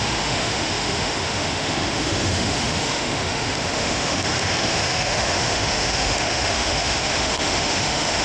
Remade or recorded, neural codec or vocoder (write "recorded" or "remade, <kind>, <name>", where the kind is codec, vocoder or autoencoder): remade, autoencoder, DAC-VAE